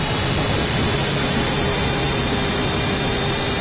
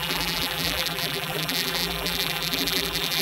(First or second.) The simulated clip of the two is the second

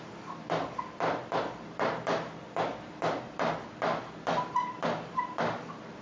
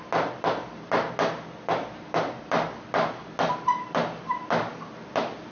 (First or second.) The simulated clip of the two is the first